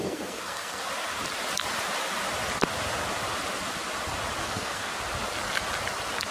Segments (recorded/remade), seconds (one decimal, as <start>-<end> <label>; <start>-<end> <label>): 0.0-0.9 remade; 0.9-4.4 recorded; 4.4-4.9 remade; 4.9-6.3 recorded